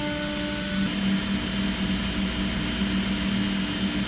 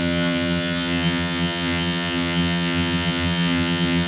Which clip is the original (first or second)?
first